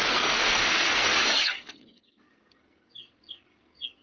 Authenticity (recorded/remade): remade